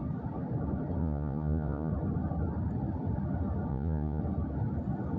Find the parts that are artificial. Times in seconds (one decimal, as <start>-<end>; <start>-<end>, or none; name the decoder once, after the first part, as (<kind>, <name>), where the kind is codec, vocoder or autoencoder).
1.0-1.9 (vocoder, Vocos); 3.7-4.2